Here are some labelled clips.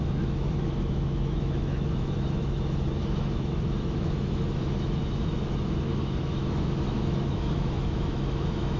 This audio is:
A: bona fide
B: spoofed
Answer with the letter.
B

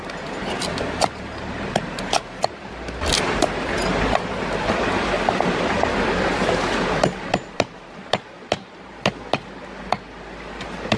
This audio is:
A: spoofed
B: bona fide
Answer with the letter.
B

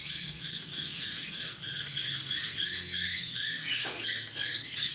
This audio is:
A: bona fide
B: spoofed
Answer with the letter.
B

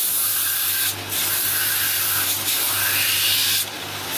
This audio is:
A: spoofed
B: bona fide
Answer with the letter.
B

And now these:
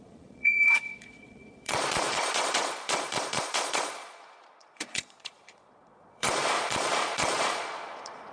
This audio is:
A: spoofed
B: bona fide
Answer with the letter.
A